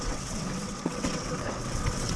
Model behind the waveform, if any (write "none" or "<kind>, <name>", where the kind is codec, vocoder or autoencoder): vocoder, WaveNeXt